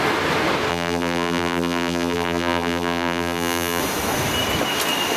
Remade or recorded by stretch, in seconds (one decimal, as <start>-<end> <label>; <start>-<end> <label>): 0.0-0.7 recorded; 0.7-3.8 remade; 3.8-5.2 recorded